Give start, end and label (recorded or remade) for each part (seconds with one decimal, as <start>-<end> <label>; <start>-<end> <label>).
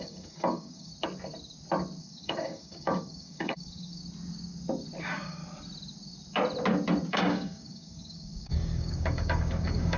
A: 0.0-0.9 remade; 0.9-2.0 recorded; 2.0-4.0 remade; 4.0-5.0 recorded; 5.0-5.4 remade; 5.4-7.1 recorded; 7.1-10.0 remade